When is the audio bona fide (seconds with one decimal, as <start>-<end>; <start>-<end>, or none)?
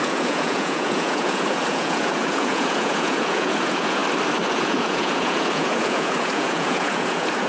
4.0-4.5